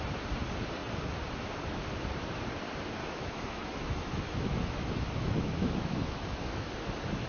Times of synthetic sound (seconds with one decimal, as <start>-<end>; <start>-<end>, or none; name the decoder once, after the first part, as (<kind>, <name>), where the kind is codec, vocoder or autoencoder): 3.0-6.7 (autoencoder, DAC-VAE)